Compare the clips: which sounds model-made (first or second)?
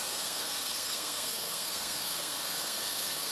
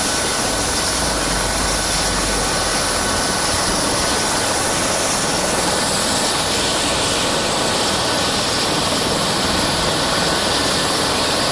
first